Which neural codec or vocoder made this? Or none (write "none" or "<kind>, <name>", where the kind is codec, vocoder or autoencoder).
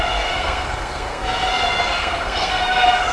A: codec, SNAC